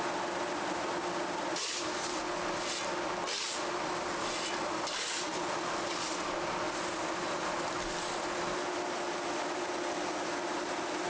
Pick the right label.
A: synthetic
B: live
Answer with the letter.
B